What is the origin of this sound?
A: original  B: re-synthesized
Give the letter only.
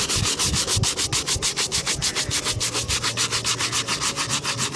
A